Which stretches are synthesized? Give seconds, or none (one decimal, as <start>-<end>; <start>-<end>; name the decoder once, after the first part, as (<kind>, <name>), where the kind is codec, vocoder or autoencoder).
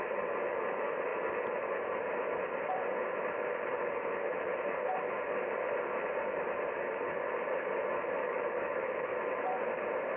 8.2-9.1 (autoencoder, DAC-VAE)